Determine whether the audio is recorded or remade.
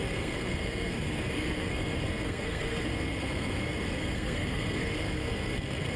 remade